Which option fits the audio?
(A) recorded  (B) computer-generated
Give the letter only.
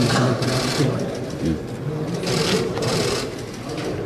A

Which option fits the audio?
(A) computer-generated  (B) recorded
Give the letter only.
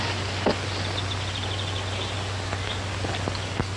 B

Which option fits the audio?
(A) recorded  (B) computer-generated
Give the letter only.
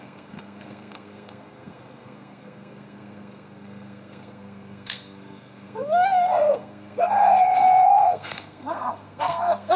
B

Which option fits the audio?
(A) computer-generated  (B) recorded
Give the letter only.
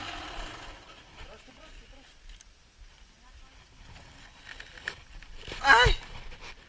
B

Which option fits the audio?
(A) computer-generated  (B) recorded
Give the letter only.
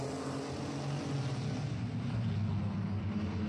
B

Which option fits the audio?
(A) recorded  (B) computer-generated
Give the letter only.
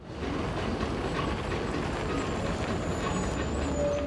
A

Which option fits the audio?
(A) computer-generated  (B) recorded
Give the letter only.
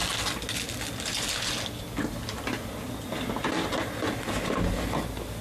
B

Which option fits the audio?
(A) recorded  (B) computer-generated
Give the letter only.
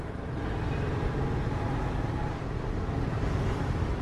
A